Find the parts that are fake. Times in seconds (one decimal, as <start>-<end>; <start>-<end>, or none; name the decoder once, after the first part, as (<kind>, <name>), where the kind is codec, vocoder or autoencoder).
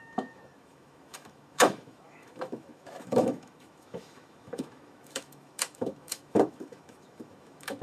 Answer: 0.0-7.8 (autoencoder, DAC-VAE)